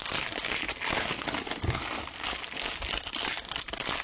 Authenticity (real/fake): real